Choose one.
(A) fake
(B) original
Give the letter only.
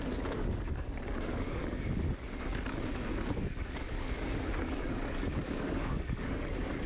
A